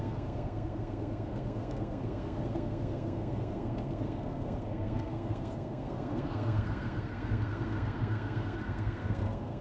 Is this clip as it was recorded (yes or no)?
no